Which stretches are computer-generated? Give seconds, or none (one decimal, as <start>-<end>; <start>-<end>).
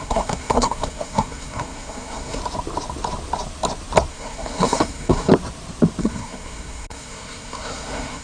0.0-2.4; 4.1-5.3; 6.0-8.2